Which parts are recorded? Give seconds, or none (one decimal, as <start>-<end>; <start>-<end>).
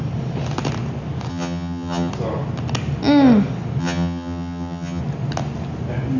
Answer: 0.0-1.3; 2.1-3.8; 5.0-6.2